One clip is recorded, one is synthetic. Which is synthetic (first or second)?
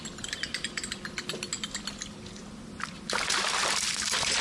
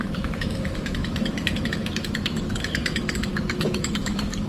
second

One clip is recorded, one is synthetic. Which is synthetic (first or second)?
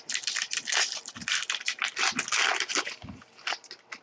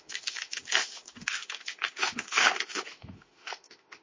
second